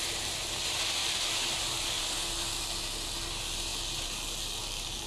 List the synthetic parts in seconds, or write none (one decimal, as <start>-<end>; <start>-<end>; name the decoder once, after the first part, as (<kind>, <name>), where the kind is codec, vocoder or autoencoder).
none